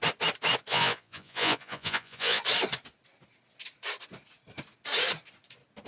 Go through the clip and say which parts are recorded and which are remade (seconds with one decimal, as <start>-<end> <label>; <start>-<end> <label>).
0.0-0.7 recorded; 0.7-2.4 remade; 2.4-5.9 recorded